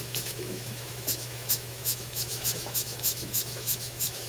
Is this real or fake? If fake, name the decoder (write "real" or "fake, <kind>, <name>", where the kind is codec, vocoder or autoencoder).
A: fake, autoencoder, DAC-VAE